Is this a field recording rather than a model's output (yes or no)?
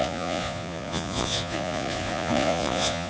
no